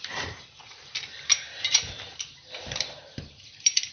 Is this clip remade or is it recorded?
remade